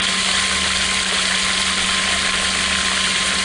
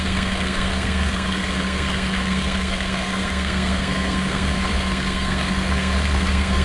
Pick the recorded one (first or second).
first